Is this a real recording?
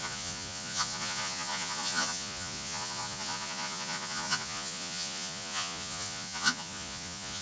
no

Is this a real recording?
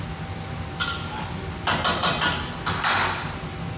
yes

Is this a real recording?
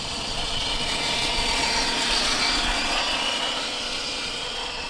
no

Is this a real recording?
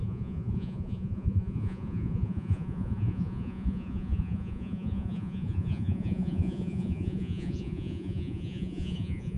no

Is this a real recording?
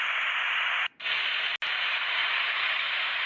yes